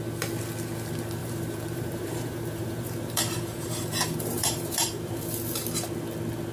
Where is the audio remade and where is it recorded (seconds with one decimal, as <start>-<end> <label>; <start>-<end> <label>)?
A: 0.0-1.2 recorded; 1.2-5.1 remade; 5.1-6.5 recorded